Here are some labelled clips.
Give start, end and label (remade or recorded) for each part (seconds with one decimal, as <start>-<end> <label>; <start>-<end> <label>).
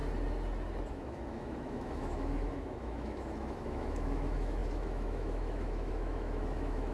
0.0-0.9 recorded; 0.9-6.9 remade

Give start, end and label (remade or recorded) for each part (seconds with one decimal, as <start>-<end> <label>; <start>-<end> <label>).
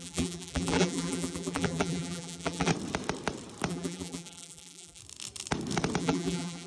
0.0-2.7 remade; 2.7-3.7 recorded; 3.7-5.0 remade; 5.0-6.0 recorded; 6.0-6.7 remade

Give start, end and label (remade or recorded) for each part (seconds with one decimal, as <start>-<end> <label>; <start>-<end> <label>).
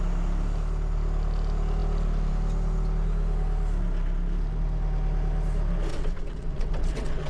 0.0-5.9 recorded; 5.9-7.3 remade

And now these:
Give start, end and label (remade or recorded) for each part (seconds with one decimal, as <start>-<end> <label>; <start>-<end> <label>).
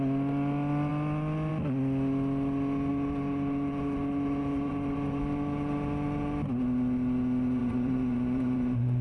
0.0-2.9 recorded; 2.9-5.2 remade; 5.2-7.6 recorded; 7.6-9.0 remade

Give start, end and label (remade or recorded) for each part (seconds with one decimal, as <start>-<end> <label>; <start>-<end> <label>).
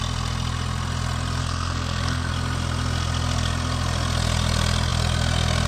0.0-1.4 recorded; 1.4-2.3 remade; 2.3-5.7 recorded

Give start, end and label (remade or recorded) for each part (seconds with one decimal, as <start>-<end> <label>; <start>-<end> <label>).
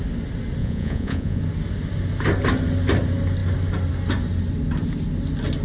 0.0-0.6 recorded; 0.6-1.4 remade; 1.4-5.6 recorded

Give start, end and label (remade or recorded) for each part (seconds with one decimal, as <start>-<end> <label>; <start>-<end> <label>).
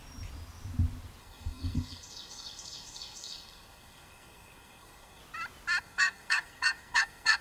0.0-1.2 recorded; 1.2-5.2 remade; 5.2-5.8 recorded; 5.8-7.4 remade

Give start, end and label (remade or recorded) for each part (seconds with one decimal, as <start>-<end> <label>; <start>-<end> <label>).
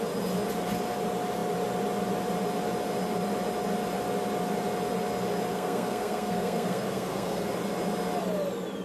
0.0-5.5 recorded; 5.5-7.5 remade; 7.5-8.8 recorded